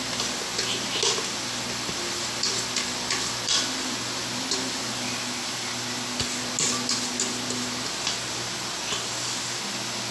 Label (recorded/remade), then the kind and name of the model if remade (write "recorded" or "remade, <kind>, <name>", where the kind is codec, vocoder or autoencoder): recorded